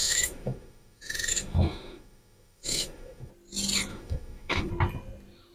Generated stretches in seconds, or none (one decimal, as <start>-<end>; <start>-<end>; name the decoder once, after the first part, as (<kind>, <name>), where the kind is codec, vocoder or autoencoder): 0.0-3.3 (autoencoder, DAC-VAE); 3.9-4.7